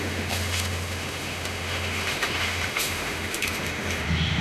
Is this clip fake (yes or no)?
yes